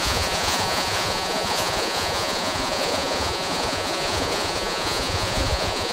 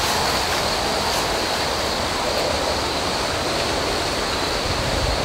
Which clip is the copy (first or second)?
first